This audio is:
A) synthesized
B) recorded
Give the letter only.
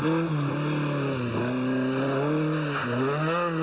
B